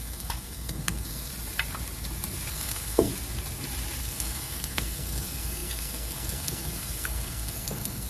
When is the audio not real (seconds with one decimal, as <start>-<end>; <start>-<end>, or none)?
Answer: 0.0-1.3; 2.5-3.1; 4.0-8.1